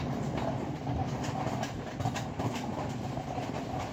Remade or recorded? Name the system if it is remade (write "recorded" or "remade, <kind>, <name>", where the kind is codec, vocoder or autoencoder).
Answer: recorded